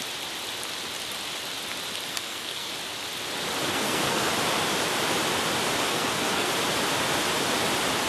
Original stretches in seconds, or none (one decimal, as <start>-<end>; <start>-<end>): 0.0-2.1; 2.7-3.7; 4.3-5.9; 6.5-8.1